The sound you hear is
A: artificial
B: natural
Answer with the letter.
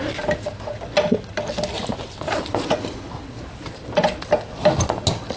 B